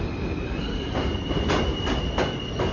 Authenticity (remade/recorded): recorded